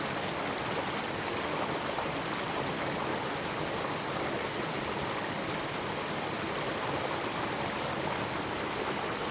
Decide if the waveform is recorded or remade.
recorded